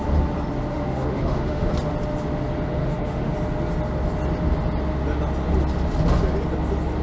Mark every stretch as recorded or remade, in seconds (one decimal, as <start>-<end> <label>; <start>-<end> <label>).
0.0-0.7 recorded; 0.7-1.7 remade; 1.7-2.8 recorded; 2.8-3.3 remade; 3.3-7.0 recorded